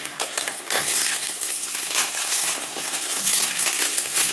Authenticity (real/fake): fake